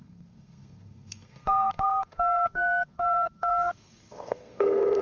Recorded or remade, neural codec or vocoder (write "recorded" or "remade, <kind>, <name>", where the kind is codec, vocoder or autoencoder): remade, codec, SNAC